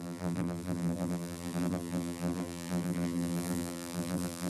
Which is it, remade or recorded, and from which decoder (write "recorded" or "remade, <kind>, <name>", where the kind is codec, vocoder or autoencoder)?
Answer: remade, vocoder, BigVGAN v2